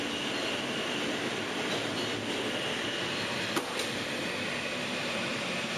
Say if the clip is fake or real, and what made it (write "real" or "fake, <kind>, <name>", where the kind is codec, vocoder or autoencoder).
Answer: real